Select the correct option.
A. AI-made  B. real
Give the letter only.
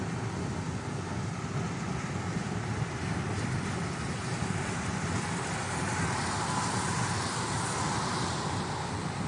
B